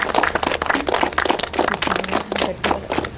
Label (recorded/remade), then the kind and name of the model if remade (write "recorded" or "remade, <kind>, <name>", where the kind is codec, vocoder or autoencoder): recorded